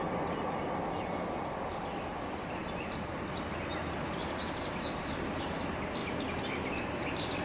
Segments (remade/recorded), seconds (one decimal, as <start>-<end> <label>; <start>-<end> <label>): 0.0-7.4 recorded

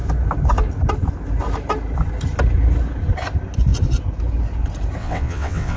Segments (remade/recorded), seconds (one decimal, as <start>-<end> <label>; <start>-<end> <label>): 0.0-5.0 recorded; 5.0-5.8 remade

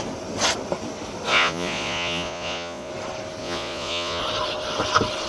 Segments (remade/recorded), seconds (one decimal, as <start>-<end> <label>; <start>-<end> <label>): 0.0-1.3 recorded; 1.3-2.9 remade; 2.9-3.4 recorded; 3.4-4.2 remade; 4.2-5.3 recorded

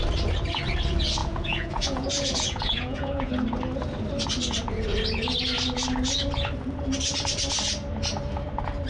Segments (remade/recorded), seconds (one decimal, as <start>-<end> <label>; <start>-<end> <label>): 0.0-1.2 recorded; 1.2-3.3 remade; 3.3-8.9 recorded